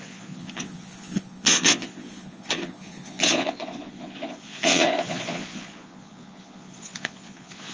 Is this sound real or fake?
fake